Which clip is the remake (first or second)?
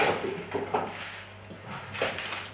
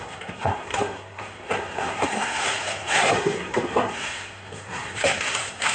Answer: second